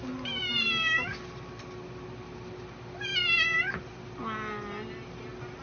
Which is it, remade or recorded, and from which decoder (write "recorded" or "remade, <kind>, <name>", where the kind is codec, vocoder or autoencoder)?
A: recorded